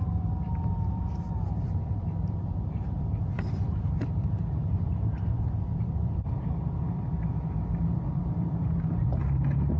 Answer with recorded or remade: remade